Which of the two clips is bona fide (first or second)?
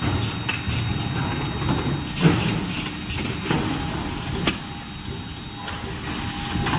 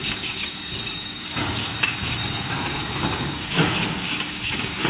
first